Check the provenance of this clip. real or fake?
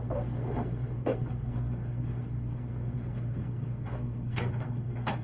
fake